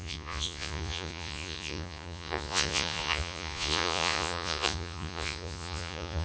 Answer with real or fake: fake